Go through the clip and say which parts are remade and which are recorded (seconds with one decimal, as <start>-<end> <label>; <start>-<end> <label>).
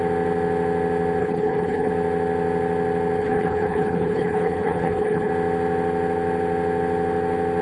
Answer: 0.0-1.2 recorded; 1.2-1.9 remade; 1.9-3.2 recorded; 3.2-5.3 remade; 5.3-7.6 recorded